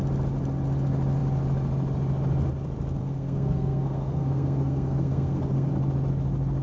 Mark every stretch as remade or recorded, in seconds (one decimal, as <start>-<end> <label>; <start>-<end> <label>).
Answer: 0.0-3.0 recorded; 3.0-5.7 remade; 5.7-6.6 recorded